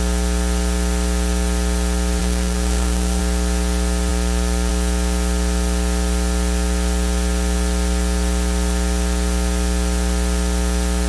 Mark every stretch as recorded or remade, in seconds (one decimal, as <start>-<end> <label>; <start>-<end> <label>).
0.0-2.2 recorded; 2.2-3.2 remade; 3.2-11.1 recorded